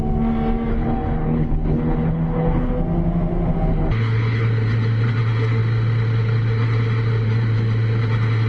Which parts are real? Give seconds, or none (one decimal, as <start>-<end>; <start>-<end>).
0.0-0.7; 2.7-3.7; 4.5-8.5